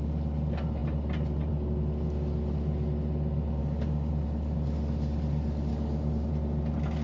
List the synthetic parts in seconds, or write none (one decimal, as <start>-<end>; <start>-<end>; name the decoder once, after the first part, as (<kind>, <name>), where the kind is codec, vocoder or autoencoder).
3.6-4.1 (codec, DAC); 5.7-6.3